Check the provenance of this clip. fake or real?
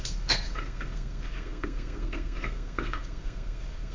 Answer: fake